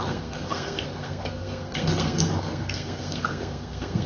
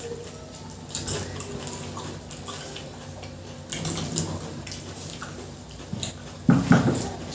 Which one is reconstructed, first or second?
first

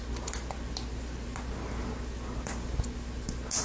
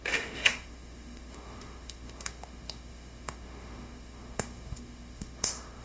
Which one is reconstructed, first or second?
second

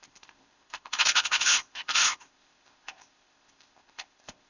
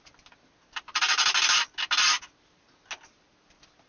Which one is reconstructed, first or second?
first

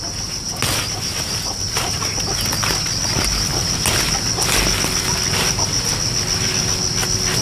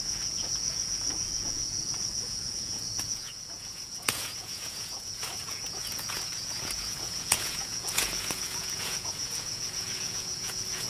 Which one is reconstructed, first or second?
second